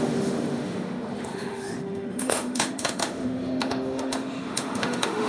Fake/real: fake